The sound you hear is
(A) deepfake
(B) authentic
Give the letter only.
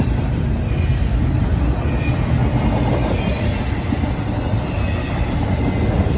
B